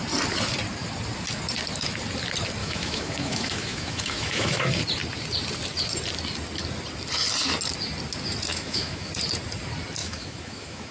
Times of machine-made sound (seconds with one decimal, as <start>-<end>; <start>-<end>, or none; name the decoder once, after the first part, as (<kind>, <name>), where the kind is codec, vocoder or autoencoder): 2.6-4.7 (autoencoder, DAC-VAE); 8.5-9.1; 10.0-10.9